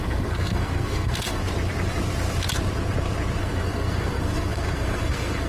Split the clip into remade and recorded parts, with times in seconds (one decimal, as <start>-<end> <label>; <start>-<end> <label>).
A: 0.0-1.4 remade; 1.4-3.4 recorded; 3.4-5.5 remade